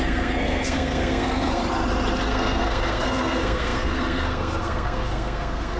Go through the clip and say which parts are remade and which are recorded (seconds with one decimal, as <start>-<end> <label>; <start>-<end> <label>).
0.0-1.6 remade; 1.6-2.3 recorded; 2.3-5.8 remade